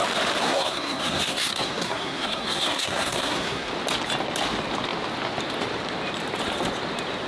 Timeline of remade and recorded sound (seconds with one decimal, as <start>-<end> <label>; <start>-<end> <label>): 0.0-0.4 recorded; 0.4-3.7 remade; 3.7-7.3 recorded

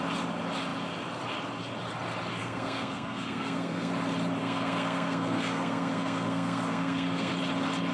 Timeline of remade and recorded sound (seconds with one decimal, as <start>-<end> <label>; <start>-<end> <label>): 0.0-2.4 recorded; 2.4-3.9 remade; 3.9-4.4 recorded; 4.4-7.3 remade; 7.3-7.9 recorded

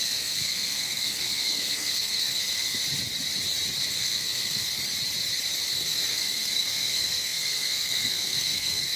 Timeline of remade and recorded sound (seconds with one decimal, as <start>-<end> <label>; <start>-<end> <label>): 0.0-2.8 remade; 2.8-3.9 recorded; 3.9-4.8 remade; 4.8-5.7 recorded; 5.7-9.0 remade

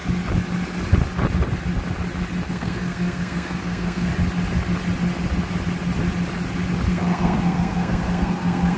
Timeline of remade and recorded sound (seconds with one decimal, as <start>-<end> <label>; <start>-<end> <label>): 0.0-2.5 recorded; 2.5-4.1 remade; 4.1-6.9 recorded; 6.9-8.8 remade

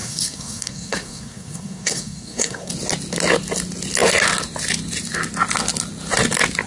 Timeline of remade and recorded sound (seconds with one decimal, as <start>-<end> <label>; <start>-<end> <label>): 0.0-2.7 remade; 2.7-6.7 recorded

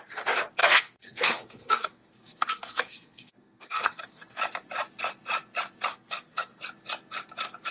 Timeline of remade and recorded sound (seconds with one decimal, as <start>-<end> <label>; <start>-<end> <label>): 0.0-0.6 recorded; 0.6-4.4 remade; 4.4-5.9 recorded; 5.9-6.6 remade; 6.6-7.7 recorded

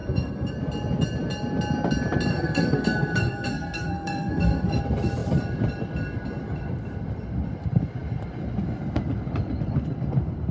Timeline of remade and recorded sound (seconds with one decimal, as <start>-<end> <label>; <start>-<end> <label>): 0.0-0.5 remade; 0.5-2.3 recorded; 2.3-4.8 remade; 4.8-10.5 recorded